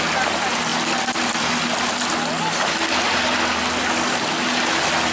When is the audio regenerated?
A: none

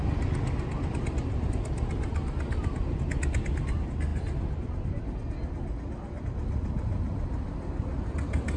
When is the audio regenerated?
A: none

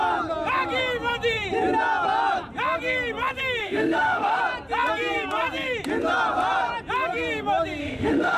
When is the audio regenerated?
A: 3.6-4.4; 7.8-8.4

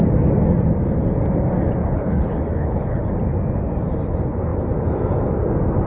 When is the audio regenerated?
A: 1.8-3.1

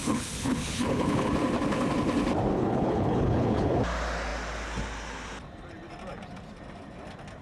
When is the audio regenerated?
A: 0.0-1.3; 2.5-3.8